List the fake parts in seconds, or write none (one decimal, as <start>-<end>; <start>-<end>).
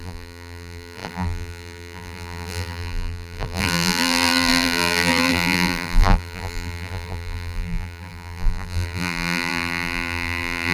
0.0-10.7